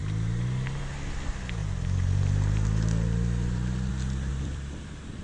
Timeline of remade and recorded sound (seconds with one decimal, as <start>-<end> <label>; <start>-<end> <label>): 0.0-1.6 recorded; 1.6-3.9 remade; 3.9-4.3 recorded; 4.3-5.2 remade